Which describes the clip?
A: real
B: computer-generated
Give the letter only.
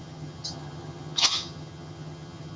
B